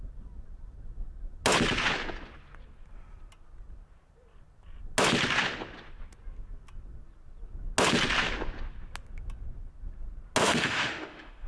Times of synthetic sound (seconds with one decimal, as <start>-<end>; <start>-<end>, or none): 10.4-11.5